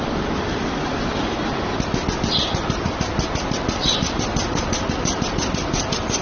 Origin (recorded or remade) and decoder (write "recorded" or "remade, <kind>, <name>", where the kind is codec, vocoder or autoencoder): recorded